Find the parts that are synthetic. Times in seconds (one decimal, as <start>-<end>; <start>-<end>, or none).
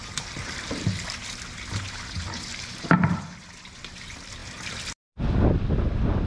none